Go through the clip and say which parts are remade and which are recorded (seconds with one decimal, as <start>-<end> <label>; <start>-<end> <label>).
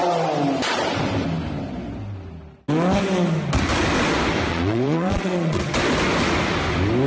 0.0-4.5 recorded; 4.5-5.6 remade; 5.6-7.1 recorded